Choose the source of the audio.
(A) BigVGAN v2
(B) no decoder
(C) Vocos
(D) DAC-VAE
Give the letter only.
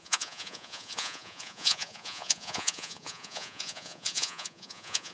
C